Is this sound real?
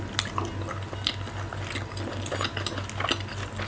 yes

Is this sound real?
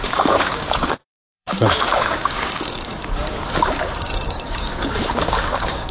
no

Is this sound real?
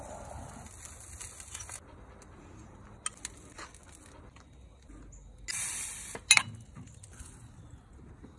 yes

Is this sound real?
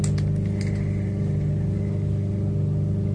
yes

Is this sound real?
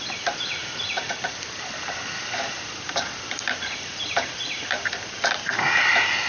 yes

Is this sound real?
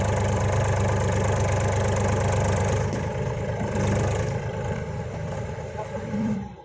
no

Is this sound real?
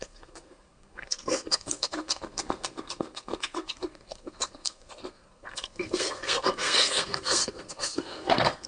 no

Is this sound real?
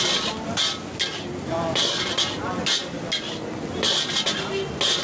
yes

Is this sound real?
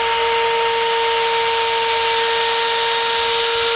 yes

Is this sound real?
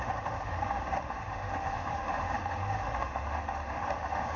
no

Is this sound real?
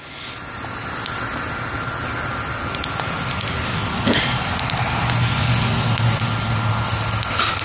yes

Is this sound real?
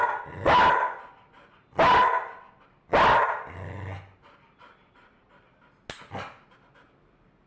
yes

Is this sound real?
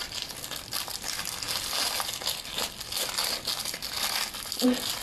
yes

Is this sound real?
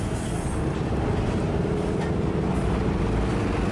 yes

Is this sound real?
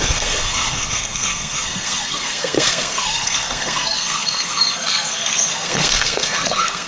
no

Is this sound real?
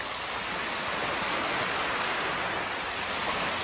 yes